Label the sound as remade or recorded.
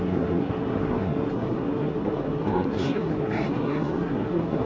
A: remade